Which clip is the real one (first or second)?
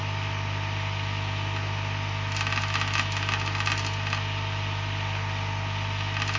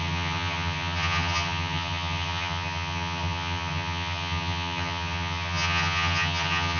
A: first